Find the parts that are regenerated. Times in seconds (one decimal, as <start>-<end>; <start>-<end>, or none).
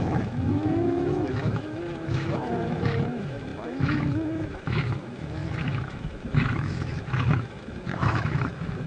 0.0-8.9